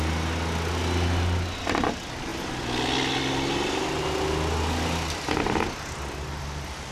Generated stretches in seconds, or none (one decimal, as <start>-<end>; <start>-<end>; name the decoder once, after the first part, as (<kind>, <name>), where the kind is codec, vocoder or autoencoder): none